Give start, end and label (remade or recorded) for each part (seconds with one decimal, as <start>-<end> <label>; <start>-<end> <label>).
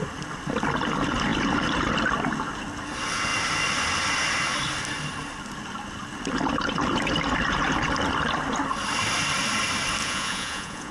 0.0-10.0 recorded; 10.0-10.9 remade